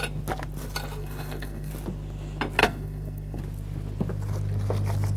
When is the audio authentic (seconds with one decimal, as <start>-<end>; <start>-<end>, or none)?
0.0-1.0; 1.7-2.6; 3.4-5.2